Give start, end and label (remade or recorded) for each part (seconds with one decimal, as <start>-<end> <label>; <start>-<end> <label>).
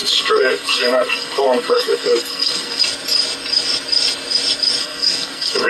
0.0-2.8 remade; 2.8-4.8 recorded; 4.8-5.7 remade